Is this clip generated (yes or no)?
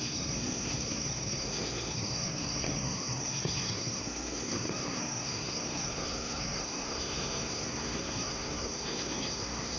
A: yes